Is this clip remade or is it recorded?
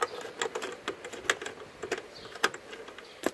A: recorded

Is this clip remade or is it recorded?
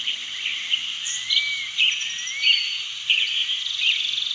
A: recorded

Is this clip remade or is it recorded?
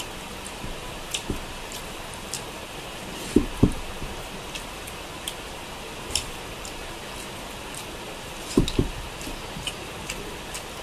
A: remade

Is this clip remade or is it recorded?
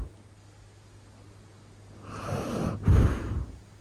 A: recorded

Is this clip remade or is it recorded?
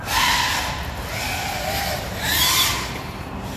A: recorded